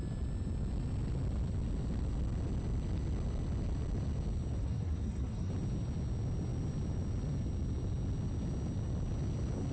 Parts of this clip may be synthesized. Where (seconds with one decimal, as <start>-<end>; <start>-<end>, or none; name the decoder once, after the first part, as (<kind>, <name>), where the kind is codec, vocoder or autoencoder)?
4.6-5.5 (codec, SNAC)